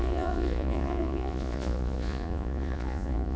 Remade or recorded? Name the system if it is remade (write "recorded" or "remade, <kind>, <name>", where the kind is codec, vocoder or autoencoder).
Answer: remade, vocoder, Vocos